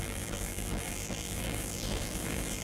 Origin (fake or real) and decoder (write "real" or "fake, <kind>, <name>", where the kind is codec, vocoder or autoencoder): fake, vocoder, BigVGAN v2